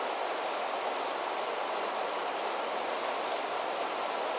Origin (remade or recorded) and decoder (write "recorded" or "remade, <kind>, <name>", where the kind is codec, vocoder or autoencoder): remade, vocoder, BigVGAN v2